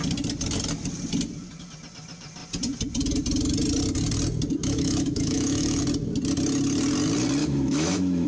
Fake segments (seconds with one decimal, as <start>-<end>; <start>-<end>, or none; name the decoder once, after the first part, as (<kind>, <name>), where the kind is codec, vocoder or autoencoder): 4.6-5.8 (autoencoder, DAC-VAE); 7.4-8.3